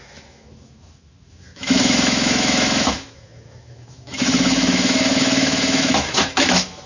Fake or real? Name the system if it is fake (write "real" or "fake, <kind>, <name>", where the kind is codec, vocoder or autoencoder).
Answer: fake, autoencoder, DAC-VAE